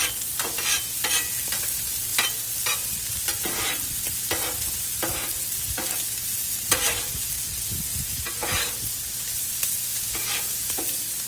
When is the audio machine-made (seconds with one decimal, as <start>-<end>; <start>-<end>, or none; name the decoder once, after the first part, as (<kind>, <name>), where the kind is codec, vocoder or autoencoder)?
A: 9.9-10.8 (vocoder, Vocos)